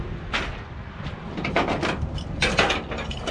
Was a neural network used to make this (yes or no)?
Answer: no